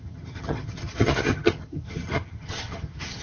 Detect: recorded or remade remade